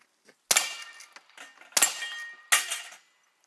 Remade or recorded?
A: recorded